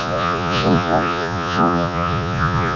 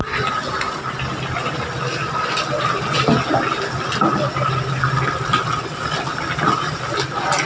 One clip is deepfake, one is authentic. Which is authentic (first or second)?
second